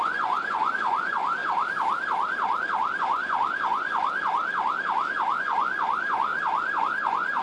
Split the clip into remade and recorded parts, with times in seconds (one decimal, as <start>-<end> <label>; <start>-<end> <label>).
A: 0.0-1.4 remade; 1.4-3.0 recorded; 3.0-4.4 remade; 4.4-5.4 recorded; 5.4-6.3 remade; 6.3-6.8 recorded; 6.8-7.4 remade